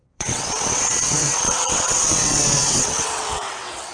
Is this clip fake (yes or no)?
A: yes